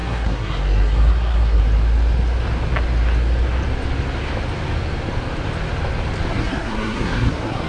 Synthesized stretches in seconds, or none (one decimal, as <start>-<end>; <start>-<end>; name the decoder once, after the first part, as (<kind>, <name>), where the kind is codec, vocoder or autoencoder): 0.0-1.6 (codec, SNAC); 6.3-7.7